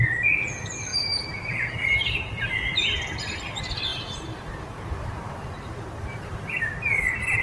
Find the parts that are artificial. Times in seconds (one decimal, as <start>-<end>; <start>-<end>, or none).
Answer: 0.9-2.1; 3.9-6.6